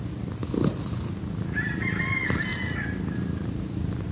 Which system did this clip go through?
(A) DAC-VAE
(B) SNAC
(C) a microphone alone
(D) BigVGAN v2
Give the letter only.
D